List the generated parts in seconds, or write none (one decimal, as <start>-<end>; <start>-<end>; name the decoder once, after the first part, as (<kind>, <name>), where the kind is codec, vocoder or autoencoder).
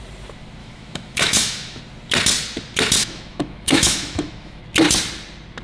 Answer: 0.6-1.8 (autoencoder, DAC-VAE); 3.0-4.6